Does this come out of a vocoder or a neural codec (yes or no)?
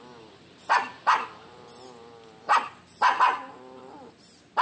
no